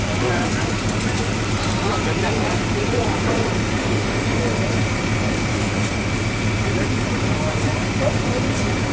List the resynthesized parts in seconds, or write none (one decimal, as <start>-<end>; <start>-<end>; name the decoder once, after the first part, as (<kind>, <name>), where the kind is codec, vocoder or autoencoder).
3.8-4.4 (autoencoder, DAC-VAE); 5.5-6.1